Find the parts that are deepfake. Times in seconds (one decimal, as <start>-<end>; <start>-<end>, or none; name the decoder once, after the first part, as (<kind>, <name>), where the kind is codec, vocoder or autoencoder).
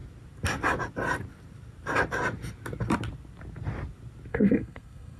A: 4.3-5.2 (codec, SNAC)